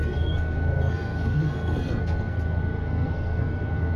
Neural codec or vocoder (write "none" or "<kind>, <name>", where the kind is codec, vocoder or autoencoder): codec, SNAC